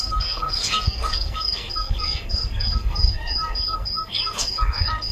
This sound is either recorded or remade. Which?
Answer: remade